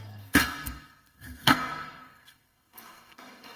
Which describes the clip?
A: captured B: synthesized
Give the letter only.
B